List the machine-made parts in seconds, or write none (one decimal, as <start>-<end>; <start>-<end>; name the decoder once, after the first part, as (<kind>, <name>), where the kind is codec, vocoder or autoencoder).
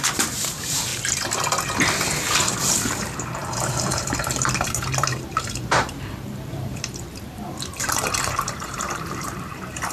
0.0-0.9 (vocoder, BigVGAN v2); 2.6-9.9